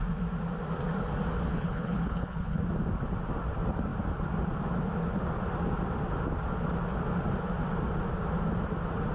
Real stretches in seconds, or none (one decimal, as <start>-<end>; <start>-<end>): 0.0-1.5; 2.6-9.1